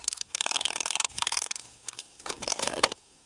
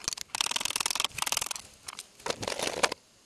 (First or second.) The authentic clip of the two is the second